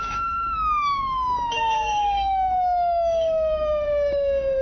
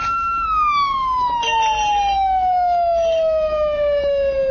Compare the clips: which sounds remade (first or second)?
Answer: first